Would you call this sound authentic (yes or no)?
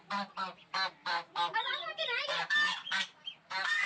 yes